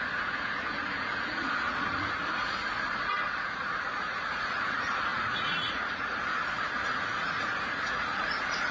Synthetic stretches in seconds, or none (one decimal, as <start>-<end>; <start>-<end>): 0.0-8.7